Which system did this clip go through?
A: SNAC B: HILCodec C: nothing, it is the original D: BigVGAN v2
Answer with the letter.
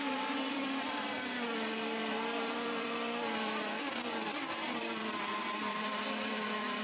D